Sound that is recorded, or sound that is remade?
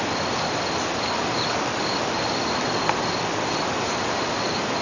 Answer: recorded